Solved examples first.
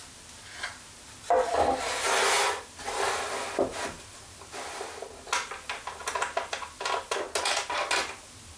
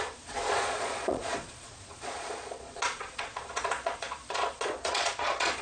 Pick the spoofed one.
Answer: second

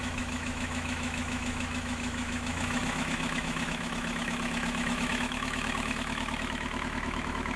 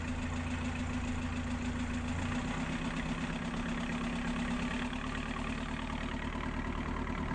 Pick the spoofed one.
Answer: first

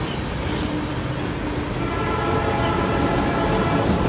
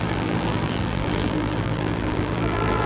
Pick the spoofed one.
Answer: second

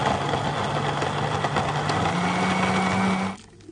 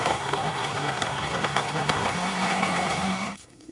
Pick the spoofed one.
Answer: second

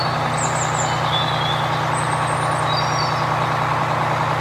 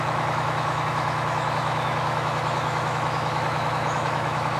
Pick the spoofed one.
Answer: second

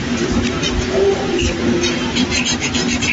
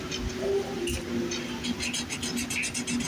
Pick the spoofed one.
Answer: first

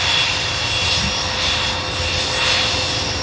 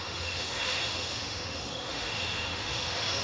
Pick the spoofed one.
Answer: second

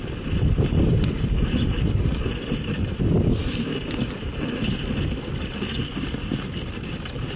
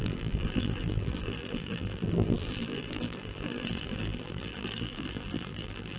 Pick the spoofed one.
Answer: second